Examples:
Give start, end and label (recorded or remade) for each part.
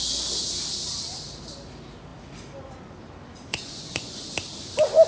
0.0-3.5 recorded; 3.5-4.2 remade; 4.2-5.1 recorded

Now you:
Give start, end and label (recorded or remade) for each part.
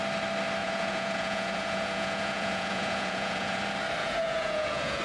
0.0-0.6 recorded; 0.6-3.6 remade; 3.6-4.0 recorded; 4.0-5.0 remade